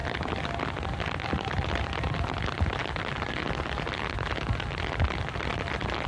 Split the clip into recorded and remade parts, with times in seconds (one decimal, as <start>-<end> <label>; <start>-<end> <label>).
0.0-1.2 recorded; 1.2-2.8 remade; 2.8-5.2 recorded; 5.2-6.1 remade